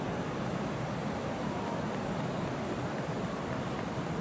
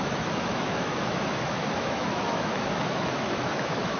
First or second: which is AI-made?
second